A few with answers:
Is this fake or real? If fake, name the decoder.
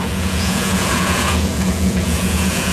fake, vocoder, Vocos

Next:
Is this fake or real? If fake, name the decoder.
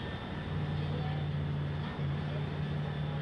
real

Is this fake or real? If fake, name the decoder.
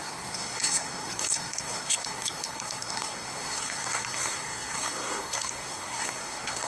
fake, codec, SNAC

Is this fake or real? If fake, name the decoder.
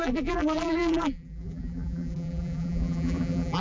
fake, vocoder, BigVGAN v2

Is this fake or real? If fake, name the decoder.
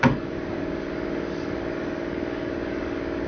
fake, codec, DAC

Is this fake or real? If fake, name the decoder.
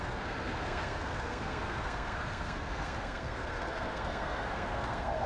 fake, codec, SNAC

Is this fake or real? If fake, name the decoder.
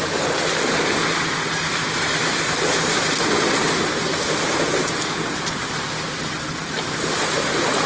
real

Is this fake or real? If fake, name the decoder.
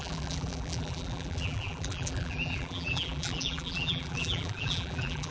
fake, vocoder, BigVGAN v2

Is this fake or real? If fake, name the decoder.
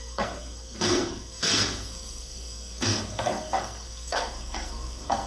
fake, codec, SNAC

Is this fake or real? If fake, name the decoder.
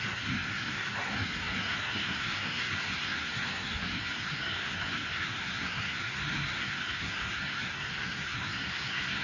fake, codec, SNAC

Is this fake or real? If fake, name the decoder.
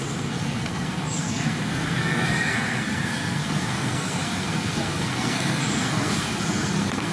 fake, codec, SNAC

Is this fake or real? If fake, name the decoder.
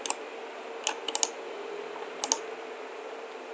real